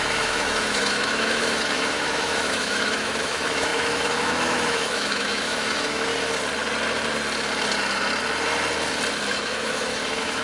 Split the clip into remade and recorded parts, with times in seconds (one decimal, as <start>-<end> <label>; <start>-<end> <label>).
0.0-6.1 remade; 6.1-9.3 recorded; 9.3-10.4 remade

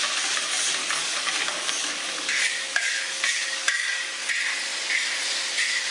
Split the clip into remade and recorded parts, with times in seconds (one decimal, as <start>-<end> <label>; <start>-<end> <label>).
0.0-0.8 recorded; 0.8-4.3 remade; 4.3-5.9 recorded